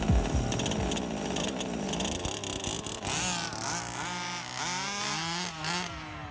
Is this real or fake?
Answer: real